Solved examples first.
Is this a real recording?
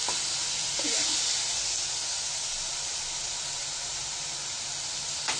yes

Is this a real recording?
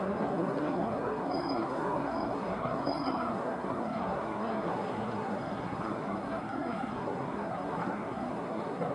no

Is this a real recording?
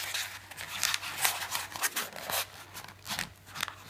yes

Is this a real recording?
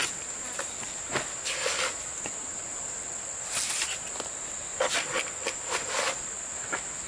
yes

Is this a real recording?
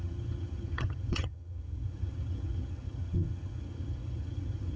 no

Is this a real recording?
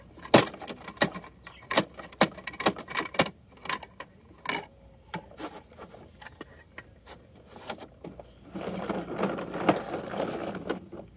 yes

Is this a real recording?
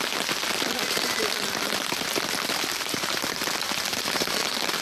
yes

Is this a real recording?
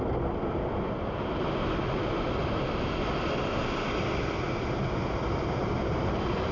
yes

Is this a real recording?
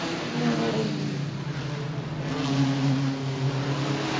yes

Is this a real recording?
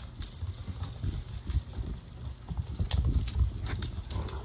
yes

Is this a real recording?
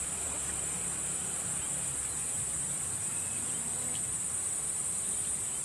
no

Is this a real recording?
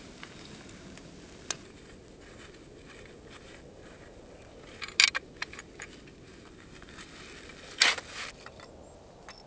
yes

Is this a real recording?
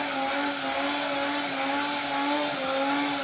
yes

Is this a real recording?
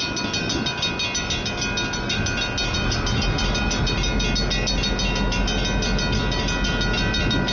yes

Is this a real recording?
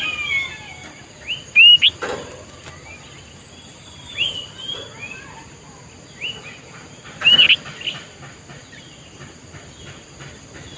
yes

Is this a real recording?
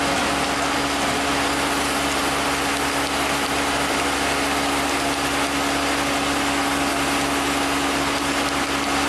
yes